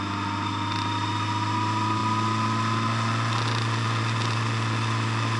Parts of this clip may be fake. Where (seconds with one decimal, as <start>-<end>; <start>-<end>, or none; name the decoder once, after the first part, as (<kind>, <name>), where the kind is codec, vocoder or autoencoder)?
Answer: none